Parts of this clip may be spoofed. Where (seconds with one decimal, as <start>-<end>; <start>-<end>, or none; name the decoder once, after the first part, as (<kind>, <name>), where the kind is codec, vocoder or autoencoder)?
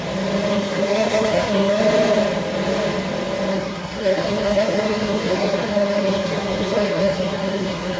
0.5-1.8 (codec, SNAC); 3.5-8.0